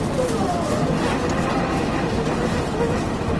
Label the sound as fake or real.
real